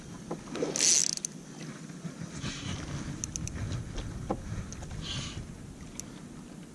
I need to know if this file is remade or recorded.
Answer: recorded